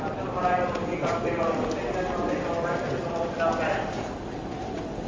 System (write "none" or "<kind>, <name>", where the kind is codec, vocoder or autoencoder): none